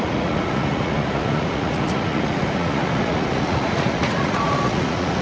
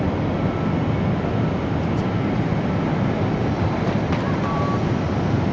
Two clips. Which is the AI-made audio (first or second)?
first